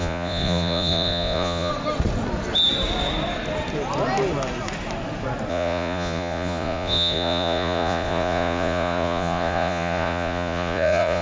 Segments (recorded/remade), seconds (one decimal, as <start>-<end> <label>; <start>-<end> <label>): 0.0-1.7 remade; 1.7-5.5 recorded; 5.5-11.2 remade